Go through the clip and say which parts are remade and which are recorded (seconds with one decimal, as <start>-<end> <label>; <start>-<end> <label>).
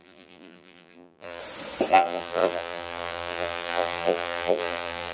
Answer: 0.0-1.4 remade; 1.4-1.9 recorded; 1.9-5.1 remade